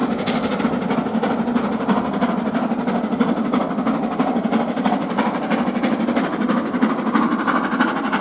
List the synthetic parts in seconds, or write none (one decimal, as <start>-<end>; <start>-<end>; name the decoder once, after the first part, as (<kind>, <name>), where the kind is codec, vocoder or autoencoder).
none